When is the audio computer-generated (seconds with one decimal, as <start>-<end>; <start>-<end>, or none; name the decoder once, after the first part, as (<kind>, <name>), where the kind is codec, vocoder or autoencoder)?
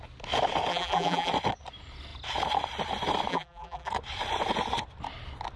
0.7-1.3 (vocoder, BigVGAN v2); 3.3-3.9